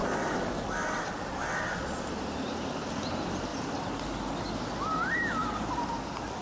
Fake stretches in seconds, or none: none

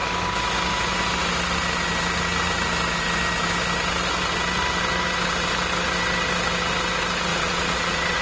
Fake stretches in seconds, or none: 7.3-8.2 (vocoder, Vocos)